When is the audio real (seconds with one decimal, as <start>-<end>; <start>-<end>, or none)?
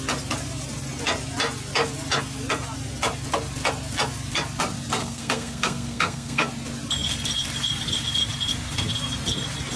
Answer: 0.0-5.0; 6.5-9.8